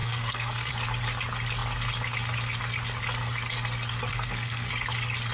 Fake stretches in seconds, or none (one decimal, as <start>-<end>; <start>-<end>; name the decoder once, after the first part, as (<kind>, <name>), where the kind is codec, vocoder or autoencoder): 0.0-0.7 (codec, SNAC); 4.1-4.7

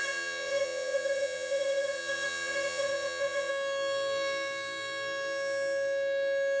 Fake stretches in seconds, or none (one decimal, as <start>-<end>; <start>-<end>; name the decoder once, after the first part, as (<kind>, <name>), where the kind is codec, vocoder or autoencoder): 0.0-3.5 (vocoder, Vocos)

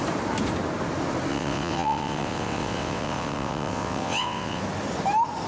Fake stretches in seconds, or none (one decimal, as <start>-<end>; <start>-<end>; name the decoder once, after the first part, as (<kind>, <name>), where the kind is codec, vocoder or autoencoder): 1.3-4.6 (vocoder, WaveNeXt)

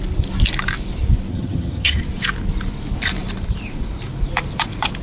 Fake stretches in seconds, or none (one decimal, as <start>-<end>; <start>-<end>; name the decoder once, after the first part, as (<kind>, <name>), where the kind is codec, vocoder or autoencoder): 1.3-2.0 (vocoder, HiFi-GAN)

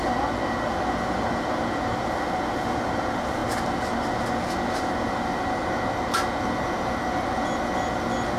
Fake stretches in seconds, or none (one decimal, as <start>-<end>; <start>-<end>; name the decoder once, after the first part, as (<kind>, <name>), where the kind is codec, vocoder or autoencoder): none

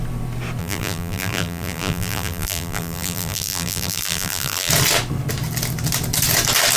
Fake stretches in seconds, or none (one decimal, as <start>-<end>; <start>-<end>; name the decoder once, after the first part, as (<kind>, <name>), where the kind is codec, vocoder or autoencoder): 0.6-4.7 (vocoder, BigVGAN v2)

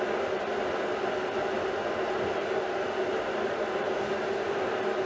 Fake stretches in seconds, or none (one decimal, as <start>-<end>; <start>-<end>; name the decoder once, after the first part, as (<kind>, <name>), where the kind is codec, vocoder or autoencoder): none

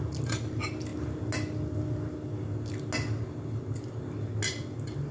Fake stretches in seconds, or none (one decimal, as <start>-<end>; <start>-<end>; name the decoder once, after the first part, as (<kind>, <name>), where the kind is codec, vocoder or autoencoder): none